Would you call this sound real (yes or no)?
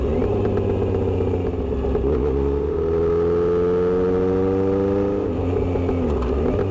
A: yes